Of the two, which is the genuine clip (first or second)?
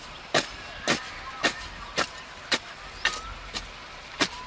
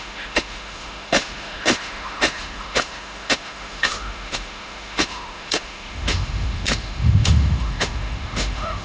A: first